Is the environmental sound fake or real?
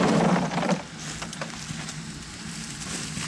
real